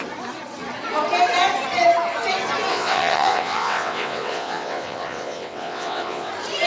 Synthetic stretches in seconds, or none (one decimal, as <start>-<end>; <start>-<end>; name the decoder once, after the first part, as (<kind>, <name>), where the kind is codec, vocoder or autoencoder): 2.7-6.3 (vocoder, WaveNeXt)